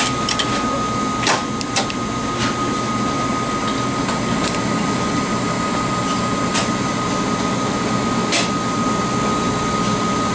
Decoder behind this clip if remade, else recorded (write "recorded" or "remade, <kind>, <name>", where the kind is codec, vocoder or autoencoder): recorded